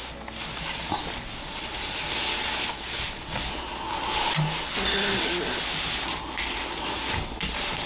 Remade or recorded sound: recorded